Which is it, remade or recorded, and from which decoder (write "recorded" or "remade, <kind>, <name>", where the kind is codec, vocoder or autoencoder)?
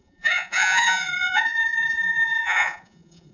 remade, vocoder, Vocos